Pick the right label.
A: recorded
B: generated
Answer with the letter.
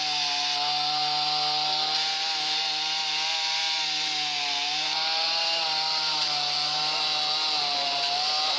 A